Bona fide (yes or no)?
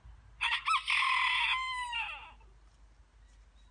yes